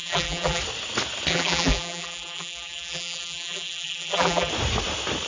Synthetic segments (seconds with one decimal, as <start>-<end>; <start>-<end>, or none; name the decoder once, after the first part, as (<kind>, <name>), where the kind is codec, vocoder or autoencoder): 0.0-0.6 (vocoder, BigVGAN v2); 1.3-4.5